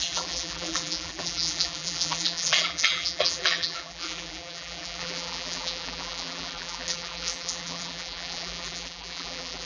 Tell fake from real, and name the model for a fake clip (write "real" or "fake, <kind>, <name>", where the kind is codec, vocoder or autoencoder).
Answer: fake, vocoder, BigVGAN v2